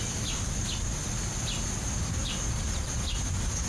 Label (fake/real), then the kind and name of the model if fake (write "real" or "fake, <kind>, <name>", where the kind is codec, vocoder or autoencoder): real